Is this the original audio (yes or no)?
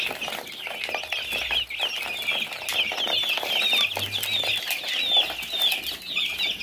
yes